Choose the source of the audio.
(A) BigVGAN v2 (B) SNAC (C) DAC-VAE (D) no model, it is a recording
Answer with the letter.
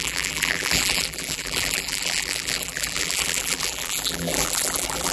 A